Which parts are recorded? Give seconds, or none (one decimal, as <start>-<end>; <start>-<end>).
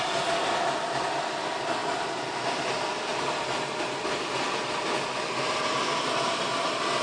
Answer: 0.0-7.0